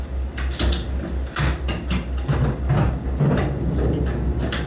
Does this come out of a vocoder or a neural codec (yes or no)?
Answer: no